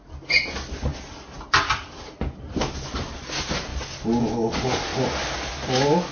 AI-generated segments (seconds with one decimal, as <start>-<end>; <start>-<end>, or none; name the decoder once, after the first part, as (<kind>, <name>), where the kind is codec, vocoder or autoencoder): none

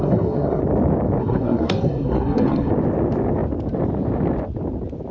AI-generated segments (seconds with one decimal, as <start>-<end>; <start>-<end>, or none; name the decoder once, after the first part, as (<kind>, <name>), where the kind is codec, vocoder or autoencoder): 0.0-0.6 (codec, SNAC); 1.2-2.7

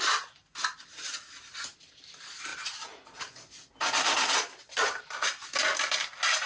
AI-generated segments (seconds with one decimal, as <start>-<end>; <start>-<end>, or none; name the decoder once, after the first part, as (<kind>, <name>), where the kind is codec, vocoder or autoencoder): none

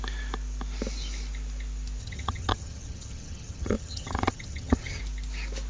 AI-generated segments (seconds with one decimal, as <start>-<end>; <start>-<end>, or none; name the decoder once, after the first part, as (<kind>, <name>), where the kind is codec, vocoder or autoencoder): 2.0-5.0 (vocoder, HiFi-GAN)

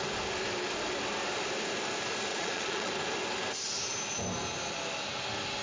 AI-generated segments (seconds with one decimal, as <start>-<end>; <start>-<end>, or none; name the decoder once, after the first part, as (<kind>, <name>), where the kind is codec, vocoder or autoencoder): 2.3-2.9 (vocoder, Vocos)

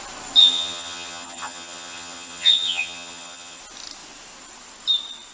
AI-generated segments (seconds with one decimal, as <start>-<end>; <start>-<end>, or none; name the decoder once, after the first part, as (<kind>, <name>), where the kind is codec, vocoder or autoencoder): 0.4-3.6 (vocoder, HiFi-GAN)

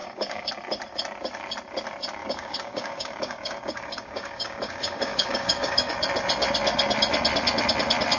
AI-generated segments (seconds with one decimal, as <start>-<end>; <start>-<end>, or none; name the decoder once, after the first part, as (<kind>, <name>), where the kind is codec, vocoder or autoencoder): 0.0-0.5 (codec, DAC); 2.2-5.9

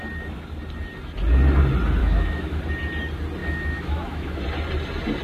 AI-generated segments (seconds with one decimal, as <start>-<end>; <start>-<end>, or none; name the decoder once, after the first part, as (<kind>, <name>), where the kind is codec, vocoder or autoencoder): 2.0-2.6 (autoencoder, DAC-VAE); 3.4-4.4